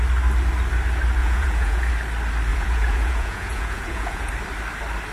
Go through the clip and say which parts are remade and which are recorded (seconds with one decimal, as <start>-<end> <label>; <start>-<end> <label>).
0.0-1.2 recorded; 1.2-1.9 remade; 1.9-2.5 recorded; 2.5-4.3 remade; 4.3-5.1 recorded